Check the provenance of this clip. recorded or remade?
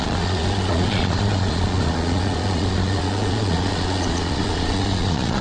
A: remade